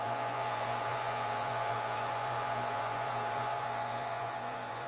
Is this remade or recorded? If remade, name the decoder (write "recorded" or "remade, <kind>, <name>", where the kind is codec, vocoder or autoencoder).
remade, vocoder, Vocos